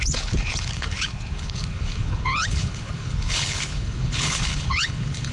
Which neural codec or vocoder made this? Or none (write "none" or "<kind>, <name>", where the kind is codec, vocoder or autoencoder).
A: codec, HILCodec